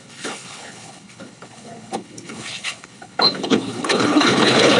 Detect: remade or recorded remade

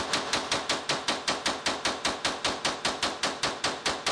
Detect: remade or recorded recorded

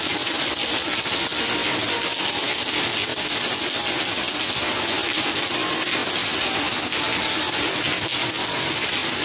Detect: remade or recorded recorded